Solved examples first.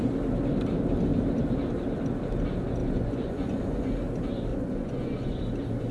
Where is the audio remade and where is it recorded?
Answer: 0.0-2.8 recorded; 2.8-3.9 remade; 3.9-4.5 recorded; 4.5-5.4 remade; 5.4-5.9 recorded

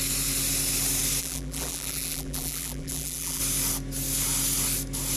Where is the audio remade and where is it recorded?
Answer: 0.0-1.2 recorded; 1.2-3.4 remade; 3.4-5.2 recorded